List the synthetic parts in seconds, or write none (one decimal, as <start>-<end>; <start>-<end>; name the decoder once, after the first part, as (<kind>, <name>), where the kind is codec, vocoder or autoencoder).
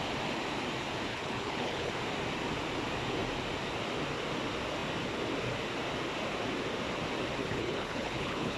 1.1-1.9 (codec, HILCodec); 7.4-8.6